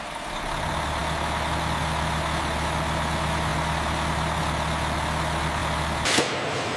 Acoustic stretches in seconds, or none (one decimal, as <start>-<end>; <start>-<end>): 0.0-6.8